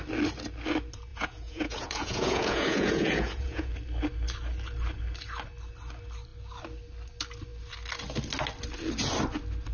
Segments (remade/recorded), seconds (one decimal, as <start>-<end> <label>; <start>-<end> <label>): 0.0-1.1 recorded; 1.1-3.7 remade; 3.7-9.7 recorded